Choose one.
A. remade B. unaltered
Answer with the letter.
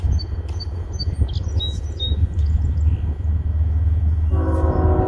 B